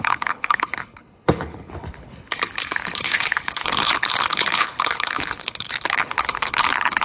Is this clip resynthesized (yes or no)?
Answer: yes